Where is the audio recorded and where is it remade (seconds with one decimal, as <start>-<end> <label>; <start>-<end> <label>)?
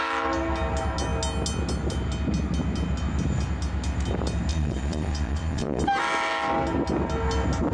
0.0-4.5 recorded; 4.5-5.8 remade; 5.8-7.7 recorded